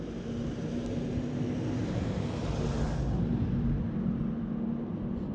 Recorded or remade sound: recorded